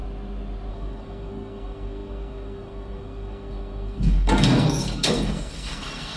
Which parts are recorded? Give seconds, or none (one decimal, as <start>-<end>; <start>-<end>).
0.0-0.7